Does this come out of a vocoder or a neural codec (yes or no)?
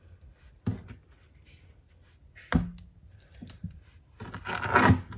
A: no